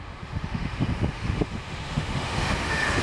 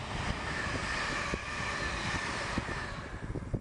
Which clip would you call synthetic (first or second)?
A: first